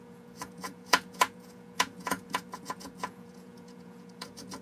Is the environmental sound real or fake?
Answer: fake